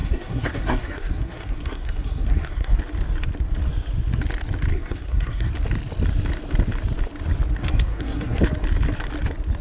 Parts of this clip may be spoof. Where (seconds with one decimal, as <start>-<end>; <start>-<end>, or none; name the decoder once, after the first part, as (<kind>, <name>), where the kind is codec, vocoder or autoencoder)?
0.0-2.8 (codec, SNAC); 4.7-5.5; 7.6-8.4